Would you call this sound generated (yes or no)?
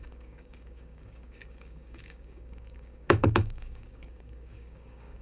yes